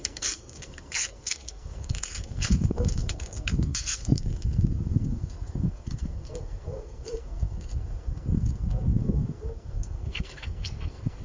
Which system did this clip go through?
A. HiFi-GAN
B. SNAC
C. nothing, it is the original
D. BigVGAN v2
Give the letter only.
B